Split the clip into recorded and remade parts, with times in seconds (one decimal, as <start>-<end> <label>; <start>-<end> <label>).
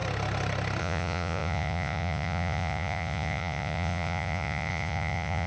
0.0-0.8 recorded; 0.8-5.5 remade